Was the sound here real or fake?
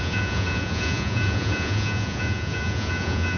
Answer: fake